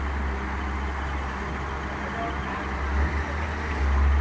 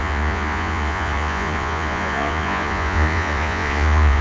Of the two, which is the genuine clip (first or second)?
first